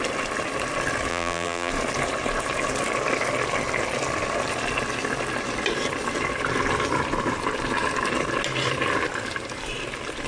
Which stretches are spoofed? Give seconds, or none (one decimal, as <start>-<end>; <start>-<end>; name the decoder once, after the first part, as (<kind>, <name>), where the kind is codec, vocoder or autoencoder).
1.1-1.7 (vocoder, BigVGAN v2)